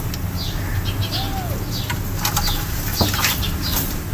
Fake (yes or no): no